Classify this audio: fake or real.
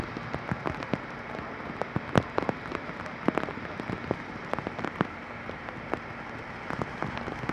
real